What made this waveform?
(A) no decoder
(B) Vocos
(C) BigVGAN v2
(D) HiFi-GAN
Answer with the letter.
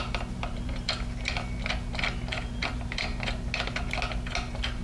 A